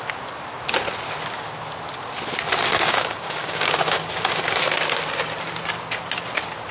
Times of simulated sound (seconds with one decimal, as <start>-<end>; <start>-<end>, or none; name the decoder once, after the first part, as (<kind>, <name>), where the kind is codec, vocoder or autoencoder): 2.7-4.1 (codec, DAC)